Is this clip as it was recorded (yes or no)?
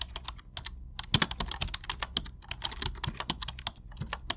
yes